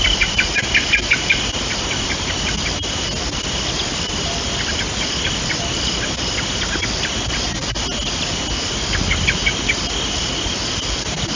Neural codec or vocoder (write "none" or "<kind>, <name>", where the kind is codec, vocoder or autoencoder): none